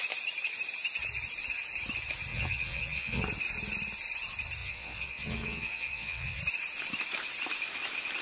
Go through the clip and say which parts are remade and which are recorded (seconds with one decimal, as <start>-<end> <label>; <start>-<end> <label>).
0.0-2.3 recorded; 2.3-3.2 remade; 3.2-4.6 recorded; 4.6-6.4 remade; 6.4-8.2 recorded